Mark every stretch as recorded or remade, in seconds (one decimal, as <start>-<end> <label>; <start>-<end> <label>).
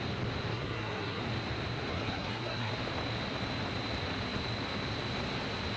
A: 0.0-0.5 recorded; 0.5-1.2 remade; 1.2-1.9 recorded; 1.9-2.7 remade; 2.7-5.8 recorded